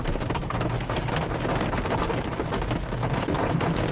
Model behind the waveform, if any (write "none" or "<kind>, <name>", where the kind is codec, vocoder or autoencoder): none